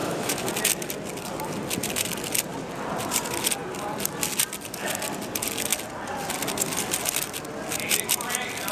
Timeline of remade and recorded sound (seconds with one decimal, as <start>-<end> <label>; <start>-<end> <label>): 0.0-0.5 remade; 0.5-8.7 recorded